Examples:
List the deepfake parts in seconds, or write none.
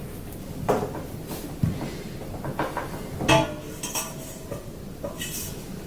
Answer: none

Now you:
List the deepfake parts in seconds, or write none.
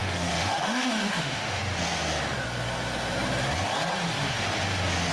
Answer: 0.0-1.6 (autoencoder, DAC-VAE)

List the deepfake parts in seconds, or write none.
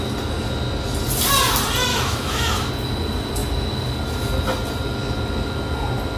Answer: 1.9-2.7 (autoencoder, DAC-VAE)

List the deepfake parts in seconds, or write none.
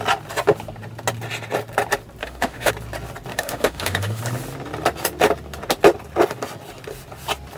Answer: 2.2-2.7 (autoencoder, DAC-VAE); 3.3-4.2